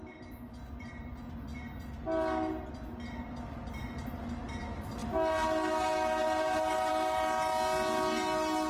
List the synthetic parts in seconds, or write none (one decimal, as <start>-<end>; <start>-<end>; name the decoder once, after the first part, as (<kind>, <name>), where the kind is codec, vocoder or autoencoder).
none